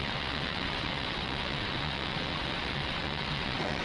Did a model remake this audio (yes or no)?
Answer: yes